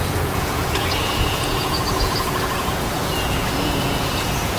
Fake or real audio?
fake